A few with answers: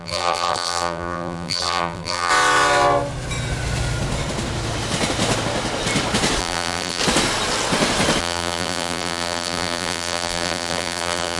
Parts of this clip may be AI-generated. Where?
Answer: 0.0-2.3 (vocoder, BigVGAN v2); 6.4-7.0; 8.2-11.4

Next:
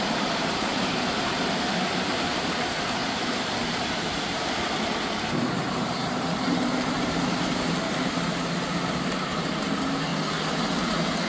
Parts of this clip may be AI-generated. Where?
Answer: 0.0-10.1 (vocoder, BigVGAN v2); 10.8-11.3

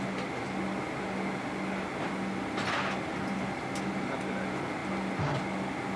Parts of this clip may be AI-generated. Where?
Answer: none